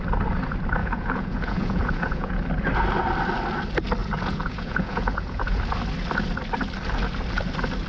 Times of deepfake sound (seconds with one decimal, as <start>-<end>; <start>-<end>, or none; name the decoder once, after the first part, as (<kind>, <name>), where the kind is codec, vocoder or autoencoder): 0.8-2.4 (vocoder, Vocos); 4.0-5.6